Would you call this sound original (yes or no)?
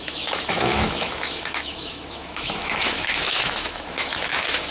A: no